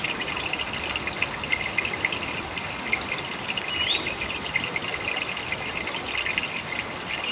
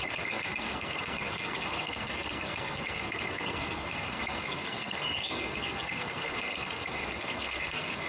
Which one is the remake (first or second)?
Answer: second